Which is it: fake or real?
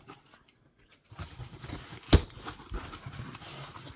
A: real